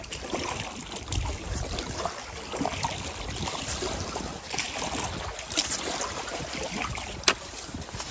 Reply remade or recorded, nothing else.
recorded